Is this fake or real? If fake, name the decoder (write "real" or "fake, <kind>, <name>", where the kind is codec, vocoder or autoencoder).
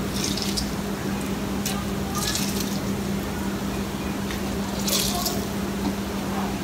real